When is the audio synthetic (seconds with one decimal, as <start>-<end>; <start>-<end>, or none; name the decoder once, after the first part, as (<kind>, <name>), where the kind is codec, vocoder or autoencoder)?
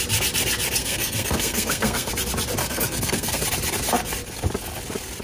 0.8-2.1 (codec, SNAC); 2.6-3.4